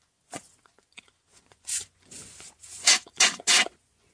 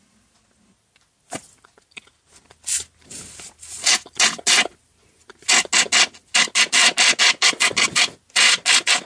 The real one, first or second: second